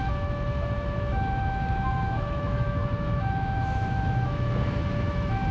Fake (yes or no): yes